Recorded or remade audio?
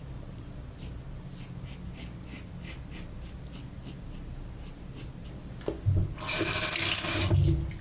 recorded